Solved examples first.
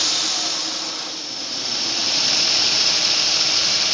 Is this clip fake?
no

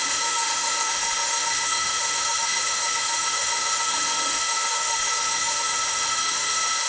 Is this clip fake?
yes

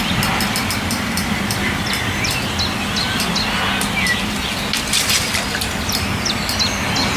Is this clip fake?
no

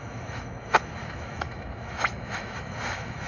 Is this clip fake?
yes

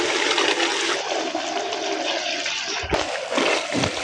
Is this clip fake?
no